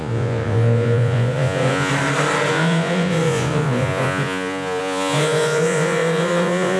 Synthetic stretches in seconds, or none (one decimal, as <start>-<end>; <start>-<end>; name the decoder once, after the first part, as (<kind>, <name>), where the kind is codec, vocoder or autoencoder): 0.0-1.9 (vocoder, Vocos); 2.5-6.8